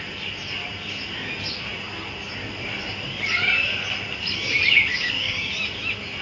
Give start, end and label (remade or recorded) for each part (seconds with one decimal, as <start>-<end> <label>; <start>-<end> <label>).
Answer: 0.0-4.9 recorded; 4.9-5.5 remade; 5.5-6.2 recorded